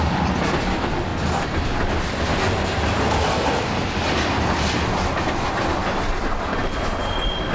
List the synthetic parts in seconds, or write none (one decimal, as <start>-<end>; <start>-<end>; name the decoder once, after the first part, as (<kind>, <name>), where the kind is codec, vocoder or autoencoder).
none